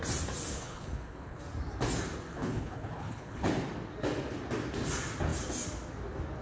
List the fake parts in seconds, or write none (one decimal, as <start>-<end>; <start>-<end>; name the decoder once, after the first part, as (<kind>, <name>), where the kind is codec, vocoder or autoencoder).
0.5-1.4 (codec, HILCodec); 2.3-3.5